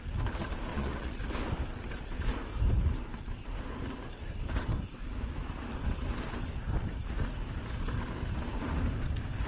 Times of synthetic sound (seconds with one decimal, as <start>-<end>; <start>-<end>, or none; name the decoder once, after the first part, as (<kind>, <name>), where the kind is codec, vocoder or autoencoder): 0.7-1.2 (vocoder, Vocos)